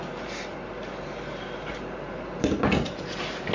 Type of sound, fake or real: real